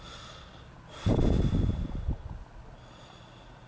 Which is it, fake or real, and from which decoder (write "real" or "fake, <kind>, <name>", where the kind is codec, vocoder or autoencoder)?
real